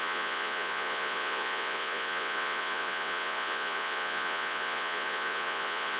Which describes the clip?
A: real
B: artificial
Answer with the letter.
B